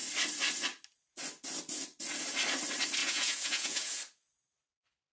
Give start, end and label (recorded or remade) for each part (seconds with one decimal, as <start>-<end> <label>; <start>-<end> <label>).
0.0-3.0 recorded; 3.0-4.0 remade; 4.0-5.1 recorded